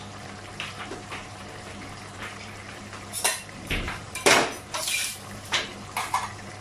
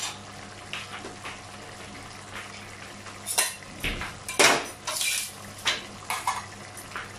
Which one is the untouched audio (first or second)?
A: second